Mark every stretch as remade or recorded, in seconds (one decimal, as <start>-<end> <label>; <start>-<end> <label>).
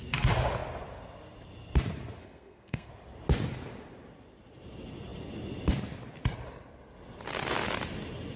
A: 0.0-2.2 recorded; 2.2-2.9 remade; 2.9-8.4 recorded